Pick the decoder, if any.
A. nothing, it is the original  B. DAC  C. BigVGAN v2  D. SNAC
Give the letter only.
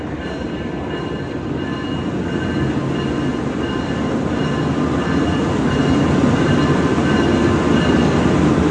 A